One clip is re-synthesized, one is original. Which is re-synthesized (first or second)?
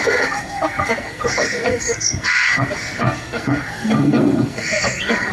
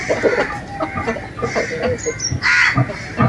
first